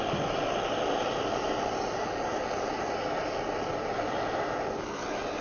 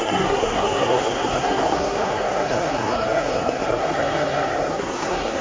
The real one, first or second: first